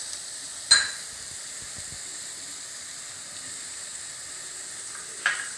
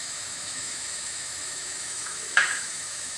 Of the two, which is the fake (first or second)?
second